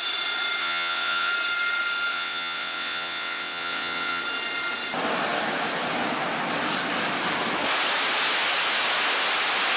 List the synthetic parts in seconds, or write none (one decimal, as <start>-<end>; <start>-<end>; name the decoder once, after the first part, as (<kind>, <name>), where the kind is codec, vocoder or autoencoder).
0.6-1.3 (vocoder, WaveNeXt); 2.1-4.2

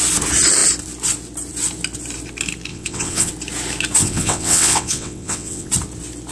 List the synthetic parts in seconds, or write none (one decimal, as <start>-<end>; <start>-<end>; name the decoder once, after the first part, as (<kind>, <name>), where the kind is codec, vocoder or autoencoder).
2.7-3.3 (vocoder, WaveNeXt); 4.0-5.7

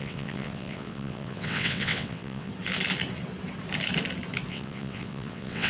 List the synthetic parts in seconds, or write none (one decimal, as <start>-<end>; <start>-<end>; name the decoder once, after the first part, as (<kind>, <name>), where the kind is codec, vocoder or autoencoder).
0.0-2.5 (vocoder, WaveNeXt); 4.5-5.7

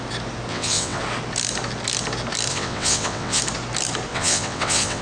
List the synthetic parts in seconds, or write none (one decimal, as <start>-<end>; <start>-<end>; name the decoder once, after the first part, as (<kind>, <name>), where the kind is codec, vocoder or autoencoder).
0.5-1.0 (vocoder, WaveNeXt); 2.5-3.4; 4.1-5.0